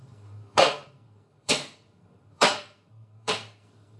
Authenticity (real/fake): fake